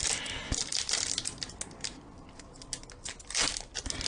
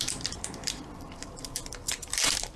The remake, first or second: second